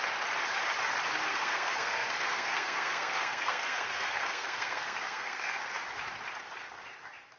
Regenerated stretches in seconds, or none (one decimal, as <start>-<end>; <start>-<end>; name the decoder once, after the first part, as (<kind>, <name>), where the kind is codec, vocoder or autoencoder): 1.3-5.7 (codec, SNAC)